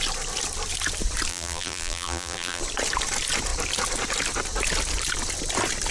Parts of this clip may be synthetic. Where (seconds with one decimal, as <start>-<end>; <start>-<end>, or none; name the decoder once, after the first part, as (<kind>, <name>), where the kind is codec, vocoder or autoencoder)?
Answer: 1.3-2.6 (vocoder, BigVGAN v2)